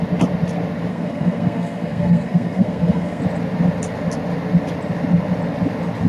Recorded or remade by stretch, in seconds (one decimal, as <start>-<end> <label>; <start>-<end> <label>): 0.0-0.9 recorded; 0.9-3.2 remade; 3.2-6.1 recorded